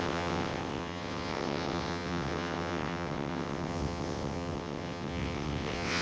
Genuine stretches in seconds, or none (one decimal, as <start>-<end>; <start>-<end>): none